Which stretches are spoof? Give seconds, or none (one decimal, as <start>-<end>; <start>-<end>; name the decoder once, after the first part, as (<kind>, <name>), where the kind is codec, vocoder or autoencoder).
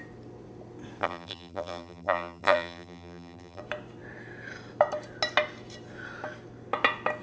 1.0-3.6 (vocoder, BigVGAN v2)